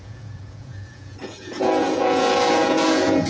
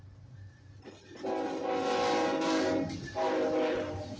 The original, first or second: second